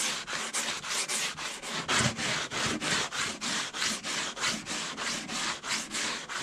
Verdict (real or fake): real